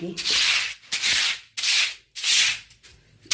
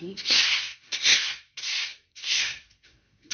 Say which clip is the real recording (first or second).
first